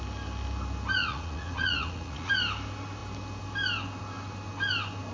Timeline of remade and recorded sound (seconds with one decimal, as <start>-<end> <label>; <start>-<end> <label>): 0.0-1.0 recorded; 1.0-2.3 remade; 2.3-5.1 recorded

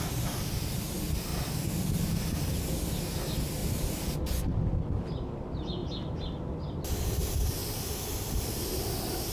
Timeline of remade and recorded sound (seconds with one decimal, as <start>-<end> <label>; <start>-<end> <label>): 0.0-1.3 recorded; 1.3-2.7 remade; 2.7-3.6 recorded; 3.6-4.3 remade; 4.3-5.8 recorded; 5.8-6.8 remade; 6.8-7.6 recorded; 7.6-8.4 remade; 8.4-9.3 recorded